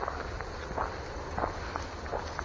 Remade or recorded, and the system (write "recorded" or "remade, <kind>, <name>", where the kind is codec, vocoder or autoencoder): recorded